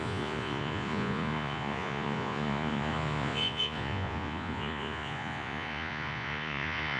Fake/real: fake